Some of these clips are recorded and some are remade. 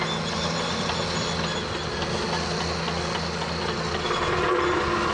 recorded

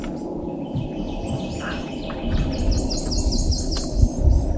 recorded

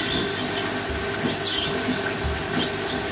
recorded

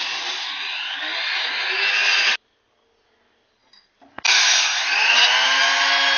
recorded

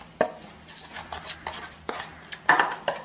recorded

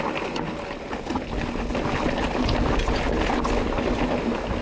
recorded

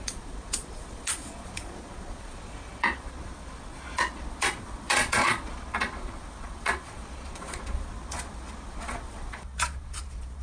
remade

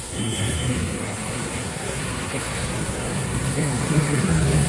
remade